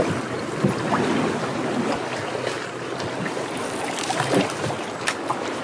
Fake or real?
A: real